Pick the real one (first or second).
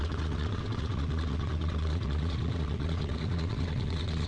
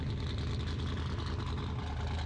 second